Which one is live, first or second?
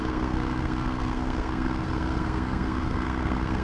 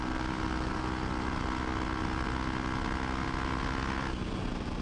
second